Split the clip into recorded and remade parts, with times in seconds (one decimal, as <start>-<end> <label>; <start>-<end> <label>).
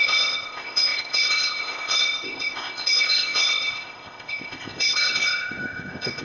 0.0-6.2 remade